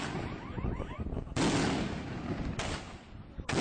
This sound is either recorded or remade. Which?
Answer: recorded